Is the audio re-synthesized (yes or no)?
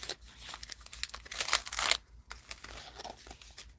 no